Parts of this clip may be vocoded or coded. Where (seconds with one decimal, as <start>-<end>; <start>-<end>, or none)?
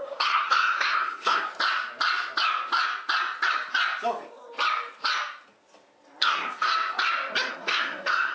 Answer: 0.0-1.5; 6.2-6.7; 7.5-8.3